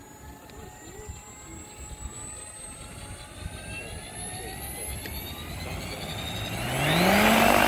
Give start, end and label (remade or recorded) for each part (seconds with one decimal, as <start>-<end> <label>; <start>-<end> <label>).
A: 0.0-7.7 recorded